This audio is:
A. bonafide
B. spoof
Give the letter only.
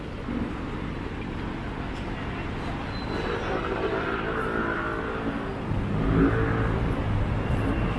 A